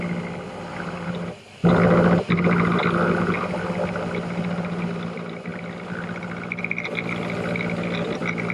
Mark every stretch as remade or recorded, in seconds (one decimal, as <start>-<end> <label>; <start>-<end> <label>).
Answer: 0.0-0.7 recorded; 0.7-1.7 remade; 1.7-8.5 recorded